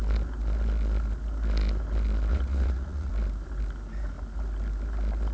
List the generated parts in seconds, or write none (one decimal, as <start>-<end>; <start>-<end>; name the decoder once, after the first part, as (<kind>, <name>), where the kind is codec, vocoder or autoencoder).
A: 2.3-3.1 (vocoder, Vocos)